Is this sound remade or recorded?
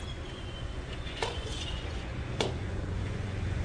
remade